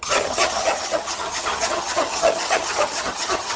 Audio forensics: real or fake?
fake